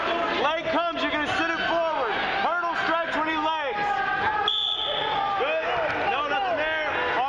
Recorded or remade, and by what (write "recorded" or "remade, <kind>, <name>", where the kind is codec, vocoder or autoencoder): recorded